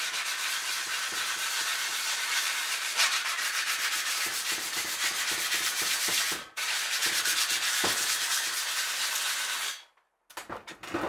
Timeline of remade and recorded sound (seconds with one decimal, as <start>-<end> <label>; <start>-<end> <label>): 0.0-1.7 recorded; 1.7-6.6 remade; 6.6-11.1 recorded